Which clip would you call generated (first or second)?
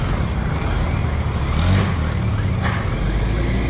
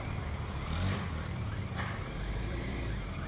second